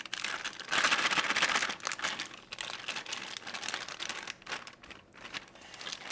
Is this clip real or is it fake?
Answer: real